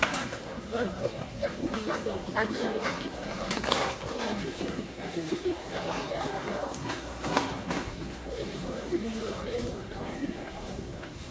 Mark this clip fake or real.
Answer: fake